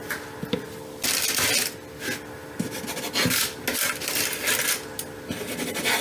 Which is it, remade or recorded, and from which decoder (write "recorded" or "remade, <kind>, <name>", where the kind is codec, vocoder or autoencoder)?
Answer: recorded